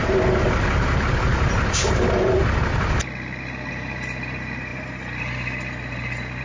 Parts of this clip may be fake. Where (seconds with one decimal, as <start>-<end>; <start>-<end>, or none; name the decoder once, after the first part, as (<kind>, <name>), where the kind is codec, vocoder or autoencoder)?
0.0-2.4 (vocoder, BigVGAN v2); 3.7-6.4